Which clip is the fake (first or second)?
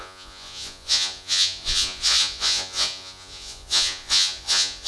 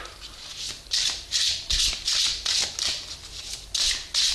first